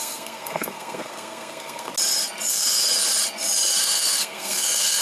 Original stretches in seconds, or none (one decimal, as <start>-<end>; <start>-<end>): 1.9-2.5; 2.9-3.8